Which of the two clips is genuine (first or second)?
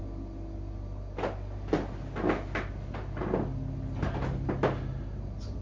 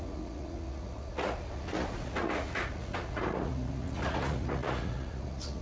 first